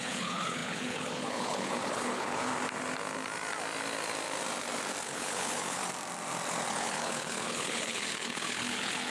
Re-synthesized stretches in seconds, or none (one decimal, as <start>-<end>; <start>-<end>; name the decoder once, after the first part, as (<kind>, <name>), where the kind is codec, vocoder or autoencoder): 0.0-2.5 (codec, HILCodec); 5.0-5.8; 6.7-9.1